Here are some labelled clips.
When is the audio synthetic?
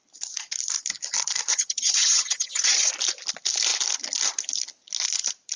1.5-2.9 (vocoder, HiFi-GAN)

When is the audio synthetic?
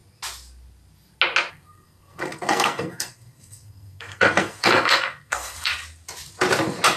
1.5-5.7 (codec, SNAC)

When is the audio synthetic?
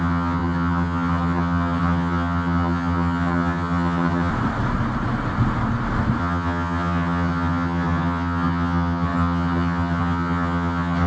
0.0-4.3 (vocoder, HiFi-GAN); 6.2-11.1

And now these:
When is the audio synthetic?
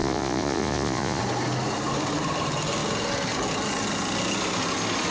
0.0-1.2 (vocoder, Vocos)